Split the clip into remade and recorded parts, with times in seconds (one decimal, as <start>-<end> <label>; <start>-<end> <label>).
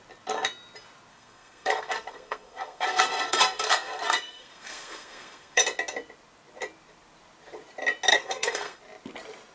0.0-1.1 recorded; 1.1-5.6 remade; 5.6-8.1 recorded; 8.1-8.8 remade; 8.8-9.5 recorded